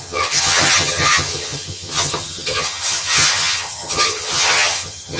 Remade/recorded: remade